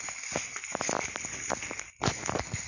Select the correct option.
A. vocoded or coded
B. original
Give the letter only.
B